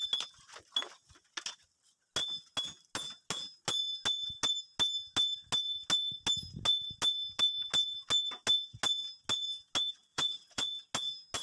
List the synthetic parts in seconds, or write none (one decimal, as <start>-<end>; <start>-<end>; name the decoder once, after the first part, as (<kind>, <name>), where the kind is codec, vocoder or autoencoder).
10.1-10.7 (vocoder, Vocos)